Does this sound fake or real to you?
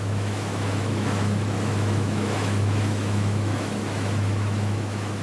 fake